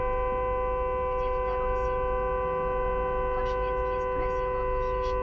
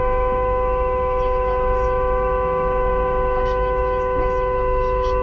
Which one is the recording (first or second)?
first